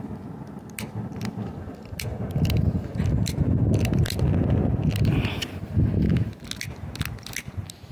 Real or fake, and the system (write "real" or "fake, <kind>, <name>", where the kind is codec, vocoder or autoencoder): real